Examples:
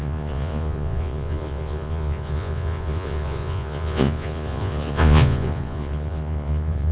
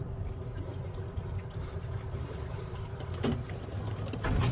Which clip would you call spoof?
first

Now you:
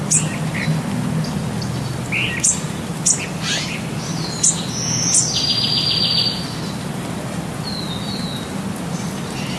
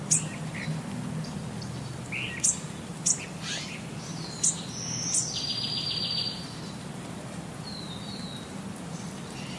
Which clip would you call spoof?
second